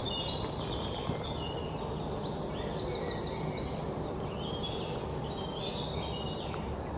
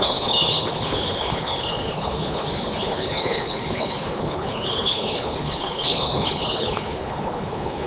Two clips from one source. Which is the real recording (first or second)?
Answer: first